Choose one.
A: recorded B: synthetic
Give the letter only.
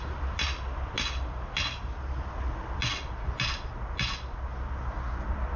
A